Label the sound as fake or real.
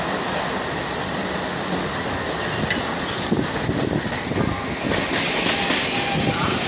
real